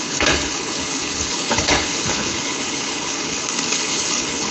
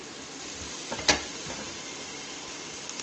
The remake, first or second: first